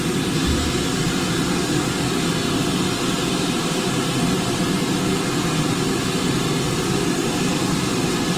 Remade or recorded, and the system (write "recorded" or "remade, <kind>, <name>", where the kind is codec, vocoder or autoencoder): recorded